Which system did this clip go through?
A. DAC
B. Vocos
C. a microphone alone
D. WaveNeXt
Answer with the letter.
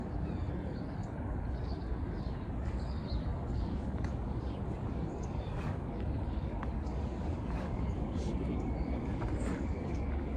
A